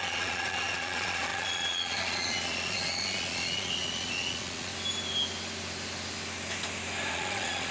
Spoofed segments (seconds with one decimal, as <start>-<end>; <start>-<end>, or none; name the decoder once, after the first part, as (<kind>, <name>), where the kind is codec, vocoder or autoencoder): 0.0-4.7 (vocoder, Vocos); 7.1-7.7

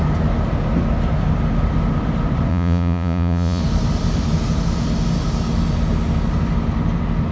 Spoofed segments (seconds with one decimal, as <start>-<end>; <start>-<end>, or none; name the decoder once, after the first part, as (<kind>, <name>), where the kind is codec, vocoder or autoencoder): 2.5-3.6 (vocoder, Vocos)

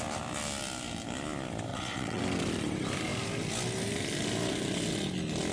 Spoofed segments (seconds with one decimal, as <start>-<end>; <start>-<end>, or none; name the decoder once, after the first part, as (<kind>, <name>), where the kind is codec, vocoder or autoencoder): 1.7-2.2 (vocoder, WaveNeXt)

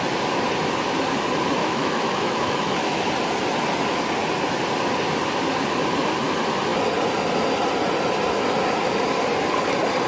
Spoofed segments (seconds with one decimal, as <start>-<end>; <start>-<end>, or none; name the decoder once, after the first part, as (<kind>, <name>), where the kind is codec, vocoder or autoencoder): 1.6-3.1 (autoencoder, DAC-VAE)

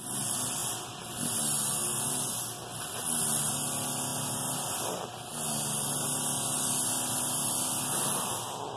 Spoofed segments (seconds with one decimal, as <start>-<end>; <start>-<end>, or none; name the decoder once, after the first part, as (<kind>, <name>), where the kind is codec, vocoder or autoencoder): none